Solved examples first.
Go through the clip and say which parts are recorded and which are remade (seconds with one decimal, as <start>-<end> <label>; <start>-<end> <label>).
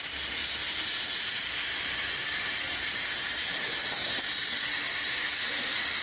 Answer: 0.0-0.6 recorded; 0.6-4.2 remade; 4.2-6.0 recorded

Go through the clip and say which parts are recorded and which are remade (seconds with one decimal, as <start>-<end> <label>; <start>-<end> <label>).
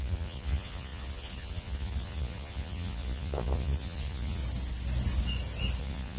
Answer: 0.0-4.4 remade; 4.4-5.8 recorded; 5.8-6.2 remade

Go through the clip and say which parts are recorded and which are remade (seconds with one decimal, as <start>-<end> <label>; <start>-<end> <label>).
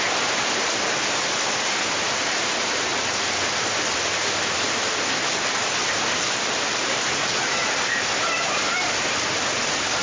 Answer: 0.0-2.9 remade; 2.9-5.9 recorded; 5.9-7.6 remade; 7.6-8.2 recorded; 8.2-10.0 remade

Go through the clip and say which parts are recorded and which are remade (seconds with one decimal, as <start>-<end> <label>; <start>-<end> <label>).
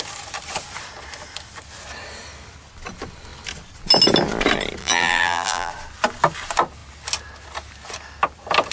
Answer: 0.0-4.8 recorded; 4.8-5.7 remade; 5.7-8.7 recorded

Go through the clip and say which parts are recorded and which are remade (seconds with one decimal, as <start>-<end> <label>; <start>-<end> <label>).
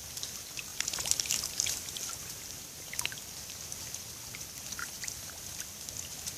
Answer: 0.0-0.7 recorded; 0.7-3.0 remade; 3.0-4.8 recorded; 4.8-5.6 remade; 5.6-6.4 recorded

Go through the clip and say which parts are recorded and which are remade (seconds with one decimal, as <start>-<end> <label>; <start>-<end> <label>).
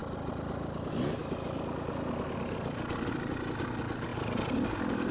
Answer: 0.0-5.1 recorded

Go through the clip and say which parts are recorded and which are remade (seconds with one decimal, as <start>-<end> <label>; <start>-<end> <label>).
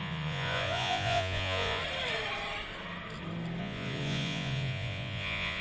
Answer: 0.0-1.8 remade; 1.8-3.6 recorded; 3.6-5.6 remade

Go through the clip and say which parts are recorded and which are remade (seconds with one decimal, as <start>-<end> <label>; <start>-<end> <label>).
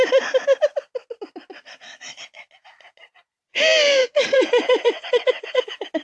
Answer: 0.0-4.0 recorded; 4.0-5.6 remade; 5.6-6.0 recorded